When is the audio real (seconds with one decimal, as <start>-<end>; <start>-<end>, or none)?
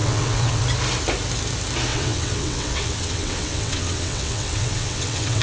0.6-1.9